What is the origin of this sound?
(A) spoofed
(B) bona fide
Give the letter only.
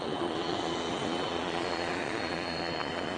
A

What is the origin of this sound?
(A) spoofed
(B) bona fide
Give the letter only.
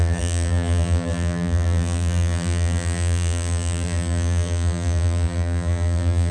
A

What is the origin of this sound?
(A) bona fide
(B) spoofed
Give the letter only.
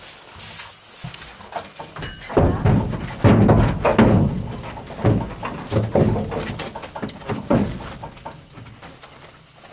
A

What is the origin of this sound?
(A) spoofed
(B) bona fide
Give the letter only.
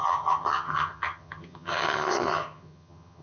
A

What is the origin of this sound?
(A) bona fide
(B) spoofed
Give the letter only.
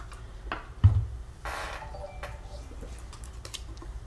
A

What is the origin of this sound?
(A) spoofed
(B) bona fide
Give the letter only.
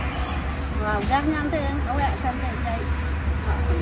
B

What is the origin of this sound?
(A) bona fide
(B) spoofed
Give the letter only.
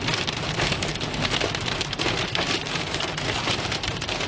B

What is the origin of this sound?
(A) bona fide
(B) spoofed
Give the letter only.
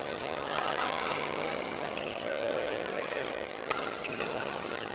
B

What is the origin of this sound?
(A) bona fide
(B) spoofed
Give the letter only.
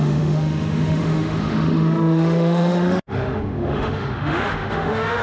B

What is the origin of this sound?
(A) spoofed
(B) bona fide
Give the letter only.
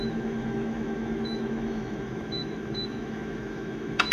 A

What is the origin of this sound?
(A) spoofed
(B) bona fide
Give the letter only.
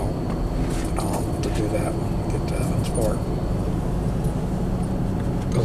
B